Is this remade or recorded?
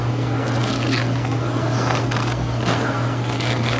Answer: remade